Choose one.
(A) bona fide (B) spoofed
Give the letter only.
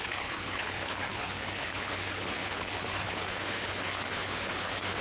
B